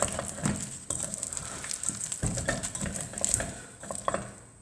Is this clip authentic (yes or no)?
yes